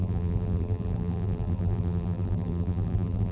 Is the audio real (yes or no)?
no